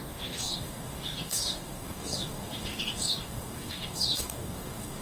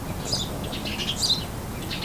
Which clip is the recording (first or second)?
second